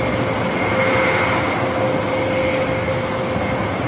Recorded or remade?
recorded